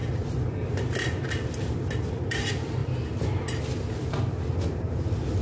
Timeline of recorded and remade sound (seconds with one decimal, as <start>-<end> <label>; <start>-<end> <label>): 0.0-2.3 remade; 2.3-5.4 recorded